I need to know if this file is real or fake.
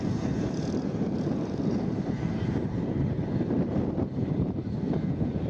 fake